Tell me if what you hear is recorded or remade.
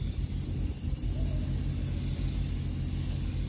recorded